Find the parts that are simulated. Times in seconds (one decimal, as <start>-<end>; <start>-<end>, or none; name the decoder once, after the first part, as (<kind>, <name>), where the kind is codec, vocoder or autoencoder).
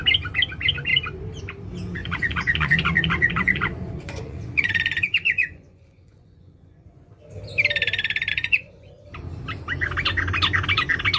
2.0-7.2 (vocoder, Vocos); 8.3-8.9